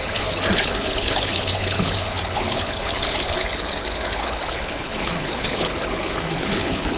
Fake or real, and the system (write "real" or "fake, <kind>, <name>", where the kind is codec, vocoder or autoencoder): fake, codec, HILCodec